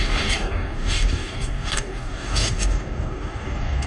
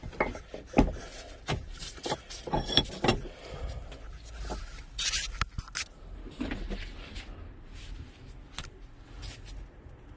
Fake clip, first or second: first